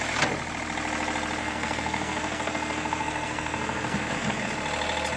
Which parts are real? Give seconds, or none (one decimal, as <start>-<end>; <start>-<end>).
0.0-1.4; 4.5-5.2

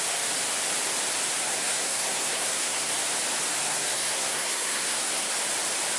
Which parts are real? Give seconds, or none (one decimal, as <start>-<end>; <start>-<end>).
0.0-1.4; 2.9-3.6; 5.3-6.0

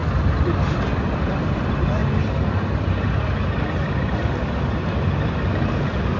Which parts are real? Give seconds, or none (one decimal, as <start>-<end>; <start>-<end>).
0.0-6.2